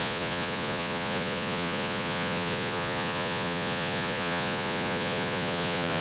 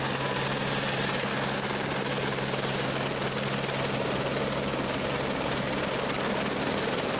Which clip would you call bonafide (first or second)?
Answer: second